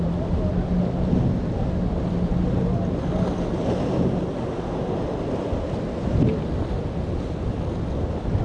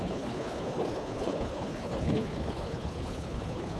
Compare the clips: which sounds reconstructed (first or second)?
second